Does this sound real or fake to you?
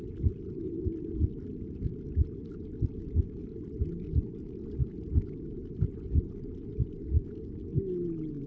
real